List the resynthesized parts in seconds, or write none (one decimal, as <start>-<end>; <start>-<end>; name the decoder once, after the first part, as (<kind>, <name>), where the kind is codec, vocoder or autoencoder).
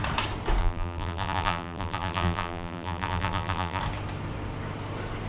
0.6-3.8 (vocoder, BigVGAN v2)